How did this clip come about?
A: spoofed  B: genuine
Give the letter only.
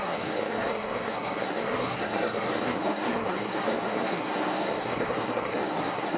A